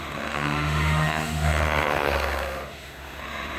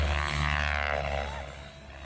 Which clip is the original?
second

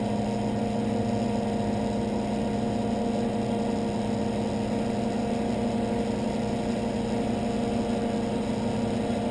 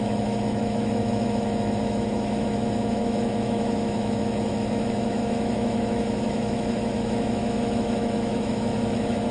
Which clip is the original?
first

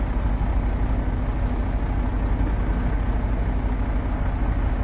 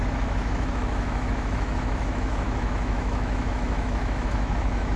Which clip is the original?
first